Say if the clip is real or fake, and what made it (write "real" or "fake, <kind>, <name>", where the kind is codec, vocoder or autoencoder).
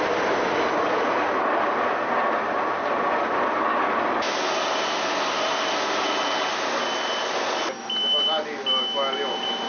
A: real